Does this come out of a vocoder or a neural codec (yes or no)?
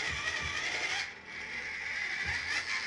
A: no